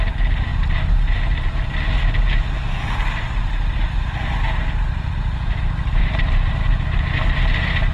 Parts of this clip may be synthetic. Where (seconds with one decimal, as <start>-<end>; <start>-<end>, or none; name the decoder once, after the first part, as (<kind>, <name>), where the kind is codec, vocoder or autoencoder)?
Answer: 6.0-6.6 (vocoder, BigVGAN v2)